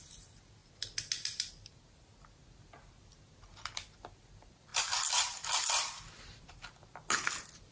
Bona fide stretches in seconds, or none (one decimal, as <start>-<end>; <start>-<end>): 0.0-4.7; 6.5-7.7